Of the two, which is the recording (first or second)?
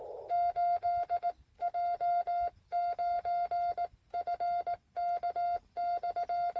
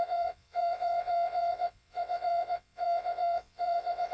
first